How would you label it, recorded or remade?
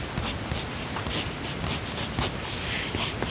recorded